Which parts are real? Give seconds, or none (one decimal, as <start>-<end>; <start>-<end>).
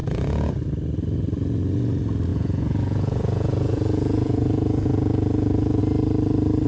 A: 0.5-2.3; 5.8-6.7